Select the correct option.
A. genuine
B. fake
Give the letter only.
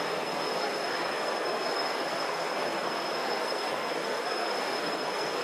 B